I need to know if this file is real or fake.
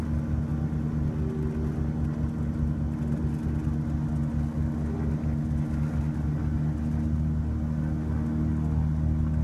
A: real